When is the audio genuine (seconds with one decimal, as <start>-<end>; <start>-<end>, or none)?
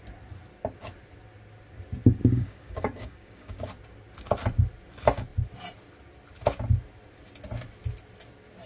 0.0-2.2; 3.7-8.7